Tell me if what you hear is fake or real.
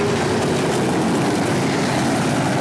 real